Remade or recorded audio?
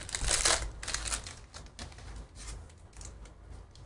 recorded